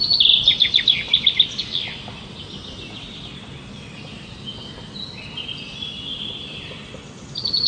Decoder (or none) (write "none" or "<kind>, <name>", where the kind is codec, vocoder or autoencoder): none